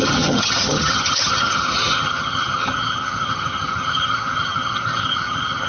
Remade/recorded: remade